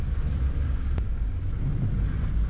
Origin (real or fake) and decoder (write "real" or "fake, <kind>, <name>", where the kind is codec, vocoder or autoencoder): real